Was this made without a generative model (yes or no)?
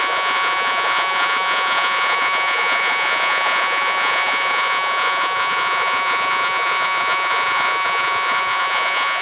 no